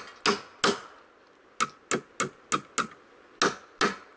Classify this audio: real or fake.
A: real